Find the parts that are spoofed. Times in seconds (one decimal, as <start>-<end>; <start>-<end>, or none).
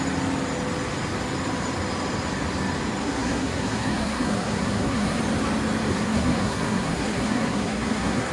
3.0-5.2; 5.9-8.3